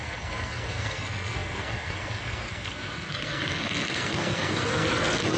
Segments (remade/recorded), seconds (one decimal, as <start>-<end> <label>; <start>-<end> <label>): 0.0-5.4 remade